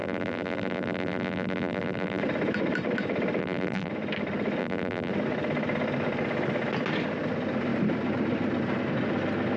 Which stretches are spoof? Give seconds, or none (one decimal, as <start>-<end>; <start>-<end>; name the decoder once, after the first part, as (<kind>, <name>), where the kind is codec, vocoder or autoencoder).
0.0-2.2 (vocoder, BigVGAN v2); 3.4-3.9; 4.6-5.1